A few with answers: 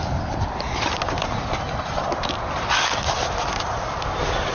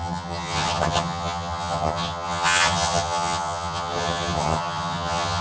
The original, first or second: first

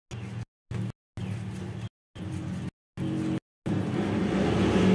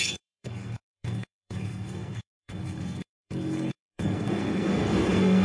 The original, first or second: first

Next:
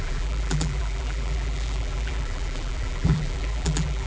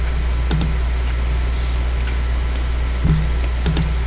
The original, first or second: second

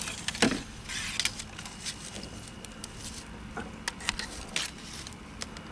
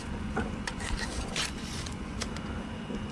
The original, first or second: first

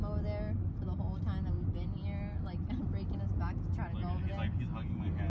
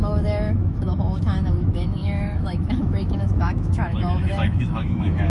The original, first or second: first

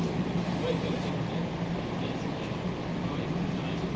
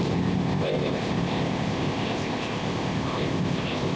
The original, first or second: first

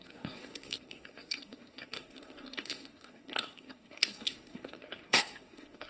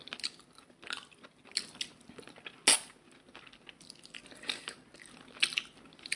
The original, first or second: second